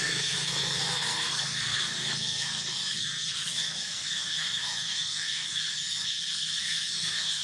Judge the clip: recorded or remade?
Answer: remade